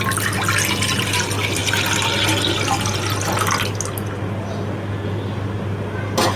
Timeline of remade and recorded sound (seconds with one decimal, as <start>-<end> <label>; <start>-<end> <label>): 0.0-6.4 recorded